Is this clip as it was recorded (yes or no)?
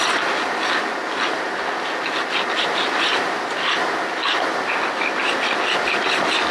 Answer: yes